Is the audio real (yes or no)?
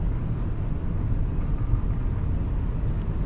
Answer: yes